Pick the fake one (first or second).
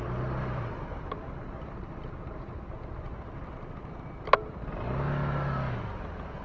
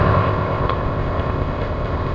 second